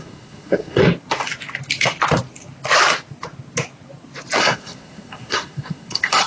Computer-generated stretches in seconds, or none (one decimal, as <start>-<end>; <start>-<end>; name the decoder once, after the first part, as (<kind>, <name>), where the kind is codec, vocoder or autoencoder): 0.0-0.8 (codec, SNAC); 4.4-6.3